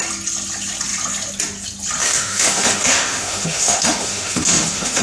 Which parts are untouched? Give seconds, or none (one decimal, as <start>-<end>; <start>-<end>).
0.0-2.0